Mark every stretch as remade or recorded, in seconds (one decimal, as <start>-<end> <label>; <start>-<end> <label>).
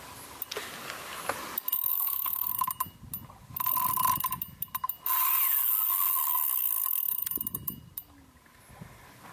0.0-1.9 recorded; 1.9-2.5 remade; 2.5-9.3 recorded